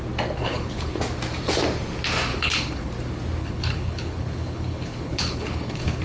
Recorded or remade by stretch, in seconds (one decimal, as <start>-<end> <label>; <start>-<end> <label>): 0.0-0.4 recorded; 0.4-1.0 remade; 1.0-2.3 recorded; 2.3-2.9 remade; 2.9-3.4 recorded; 3.4-6.0 remade